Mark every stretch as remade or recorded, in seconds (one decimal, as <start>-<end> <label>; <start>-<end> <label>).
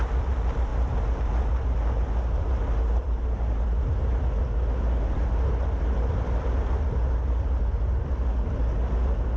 0.0-9.4 recorded